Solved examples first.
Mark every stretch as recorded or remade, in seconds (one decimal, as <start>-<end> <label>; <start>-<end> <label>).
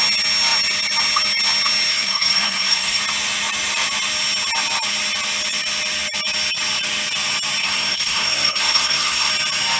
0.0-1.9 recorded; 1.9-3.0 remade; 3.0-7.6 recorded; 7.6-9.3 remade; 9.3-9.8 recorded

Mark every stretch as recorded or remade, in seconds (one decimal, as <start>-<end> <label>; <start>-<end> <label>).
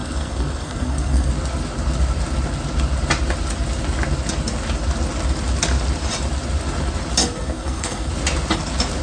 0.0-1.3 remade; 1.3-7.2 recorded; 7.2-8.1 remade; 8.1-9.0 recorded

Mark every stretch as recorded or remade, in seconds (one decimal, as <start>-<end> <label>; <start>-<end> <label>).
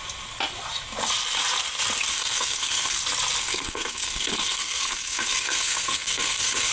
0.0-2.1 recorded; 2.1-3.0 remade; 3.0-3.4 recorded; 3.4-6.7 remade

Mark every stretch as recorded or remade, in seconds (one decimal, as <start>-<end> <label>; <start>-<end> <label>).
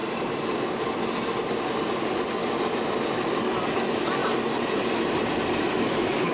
0.0-2.0 recorded; 2.0-2.4 remade; 2.4-3.2 recorded; 3.2-4.2 remade; 4.2-5.6 recorded; 5.6-6.3 remade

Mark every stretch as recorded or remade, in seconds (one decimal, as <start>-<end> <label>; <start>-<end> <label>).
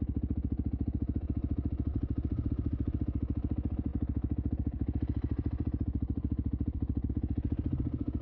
0.0-3.9 recorded; 3.9-7.1 remade; 7.1-8.2 recorded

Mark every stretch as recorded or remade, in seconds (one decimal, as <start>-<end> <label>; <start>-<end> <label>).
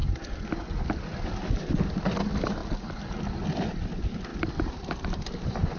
0.0-4.3 recorded; 4.3-5.2 remade; 5.2-5.8 recorded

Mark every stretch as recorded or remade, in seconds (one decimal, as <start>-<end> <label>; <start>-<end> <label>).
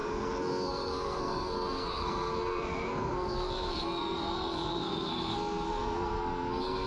0.0-6.9 remade